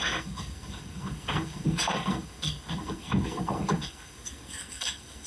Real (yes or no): no